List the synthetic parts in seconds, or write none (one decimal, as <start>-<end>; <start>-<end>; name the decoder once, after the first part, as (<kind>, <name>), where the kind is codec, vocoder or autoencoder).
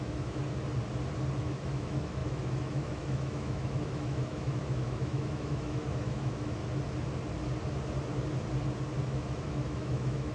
0.0-0.4 (autoencoder, DAC-VAE); 1.4-6.6; 9.0-10.3